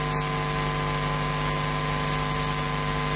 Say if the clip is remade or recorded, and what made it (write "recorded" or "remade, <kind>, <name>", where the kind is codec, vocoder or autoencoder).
recorded